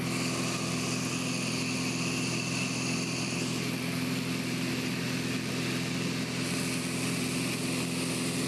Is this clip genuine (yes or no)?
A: yes